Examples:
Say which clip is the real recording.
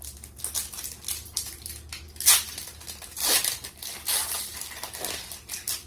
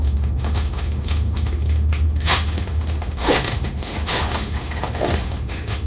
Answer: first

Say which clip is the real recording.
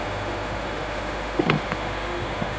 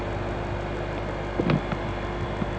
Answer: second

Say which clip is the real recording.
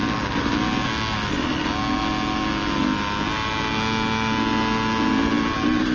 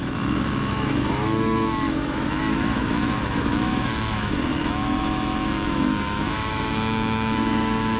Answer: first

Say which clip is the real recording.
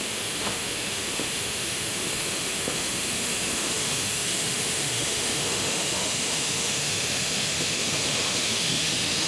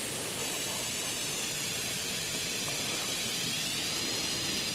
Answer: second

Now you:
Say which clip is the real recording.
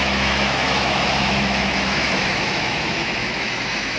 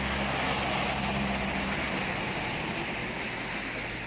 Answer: second